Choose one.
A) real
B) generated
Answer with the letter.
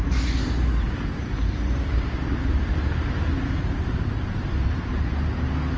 B